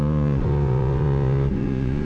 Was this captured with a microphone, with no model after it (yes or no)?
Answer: no